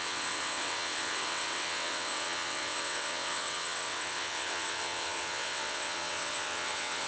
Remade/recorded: remade